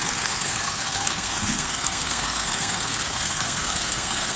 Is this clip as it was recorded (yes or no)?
no